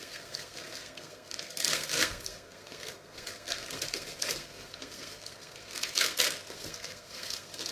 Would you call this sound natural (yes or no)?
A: no